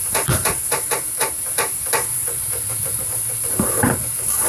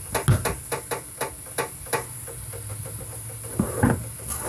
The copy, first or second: first